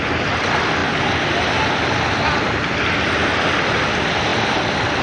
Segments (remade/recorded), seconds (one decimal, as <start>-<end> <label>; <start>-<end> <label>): 0.0-5.0 recorded